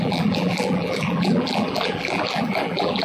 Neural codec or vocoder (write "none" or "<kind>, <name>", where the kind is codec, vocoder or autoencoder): vocoder, BigVGAN v2